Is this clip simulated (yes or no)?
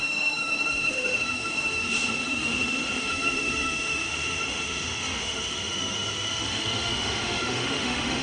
yes